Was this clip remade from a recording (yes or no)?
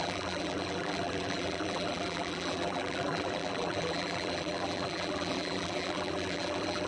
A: yes